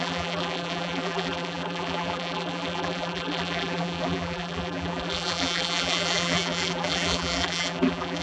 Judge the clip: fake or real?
fake